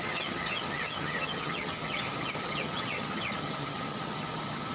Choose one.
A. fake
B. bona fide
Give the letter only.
A